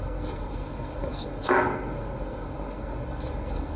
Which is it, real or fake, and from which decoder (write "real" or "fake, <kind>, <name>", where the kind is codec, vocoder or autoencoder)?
fake, codec, SNAC